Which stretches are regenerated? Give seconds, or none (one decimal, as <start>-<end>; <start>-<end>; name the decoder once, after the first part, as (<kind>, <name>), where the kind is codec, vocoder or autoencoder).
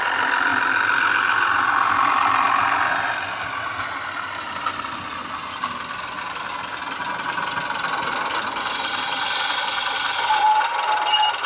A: none